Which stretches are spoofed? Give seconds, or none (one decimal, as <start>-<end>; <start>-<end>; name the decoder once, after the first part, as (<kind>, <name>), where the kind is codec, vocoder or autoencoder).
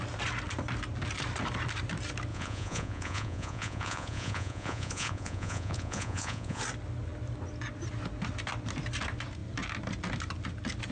2.3-6.6 (vocoder, Vocos)